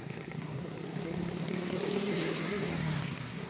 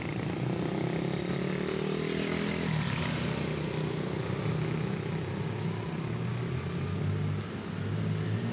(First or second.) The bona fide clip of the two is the second